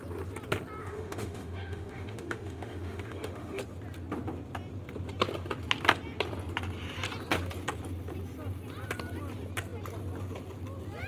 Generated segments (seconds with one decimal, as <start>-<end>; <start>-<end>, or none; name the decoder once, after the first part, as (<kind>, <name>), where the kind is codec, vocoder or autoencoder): 0.8-3.6 (autoencoder, DAC-VAE)